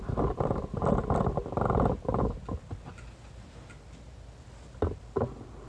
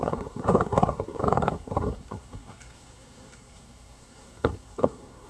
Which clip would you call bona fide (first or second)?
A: first